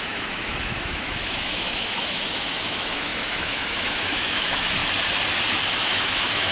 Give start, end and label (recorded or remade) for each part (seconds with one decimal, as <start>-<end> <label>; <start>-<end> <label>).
0.0-4.8 remade; 4.8-5.8 recorded; 5.8-6.5 remade